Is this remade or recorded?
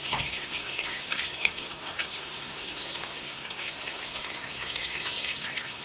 remade